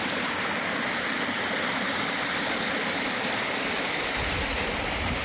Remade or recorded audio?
recorded